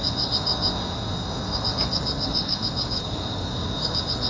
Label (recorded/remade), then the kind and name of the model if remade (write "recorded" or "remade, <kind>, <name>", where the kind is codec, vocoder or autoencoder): recorded